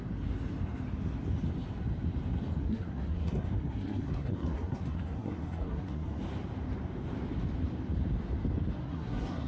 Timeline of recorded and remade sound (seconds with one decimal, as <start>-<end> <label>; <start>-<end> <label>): 0.0-2.6 recorded; 2.6-6.2 remade; 6.2-8.8 recorded; 8.8-9.5 remade